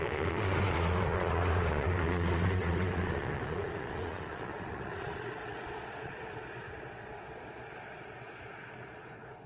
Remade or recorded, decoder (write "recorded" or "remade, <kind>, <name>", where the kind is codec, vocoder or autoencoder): remade, vocoder, Vocos